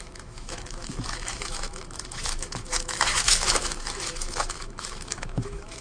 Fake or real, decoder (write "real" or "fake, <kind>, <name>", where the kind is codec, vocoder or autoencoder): fake, autoencoder, DAC-VAE